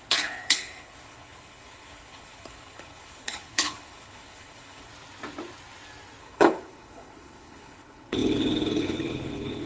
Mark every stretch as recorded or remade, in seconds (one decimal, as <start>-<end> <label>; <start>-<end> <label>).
0.0-4.9 remade; 4.9-6.2 recorded; 6.2-9.7 remade